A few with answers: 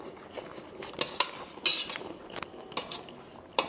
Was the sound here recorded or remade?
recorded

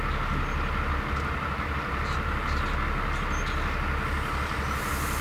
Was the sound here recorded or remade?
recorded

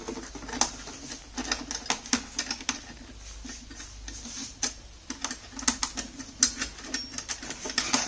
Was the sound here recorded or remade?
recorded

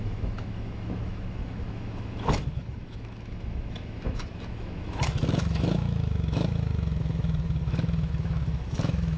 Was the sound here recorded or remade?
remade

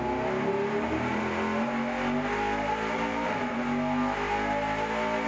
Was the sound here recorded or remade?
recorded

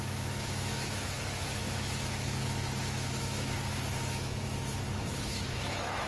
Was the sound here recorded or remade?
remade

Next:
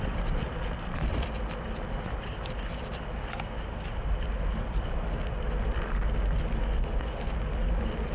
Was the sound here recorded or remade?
recorded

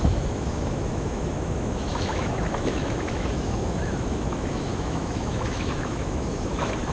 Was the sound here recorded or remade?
remade